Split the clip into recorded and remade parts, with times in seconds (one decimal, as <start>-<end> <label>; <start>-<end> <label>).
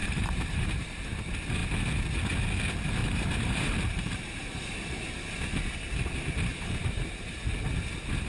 0.0-1.2 remade; 1.2-3.0 recorded; 3.0-4.6 remade; 4.6-6.5 recorded; 6.5-7.4 remade; 7.4-8.3 recorded